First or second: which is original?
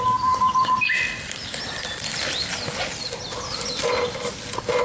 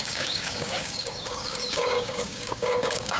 first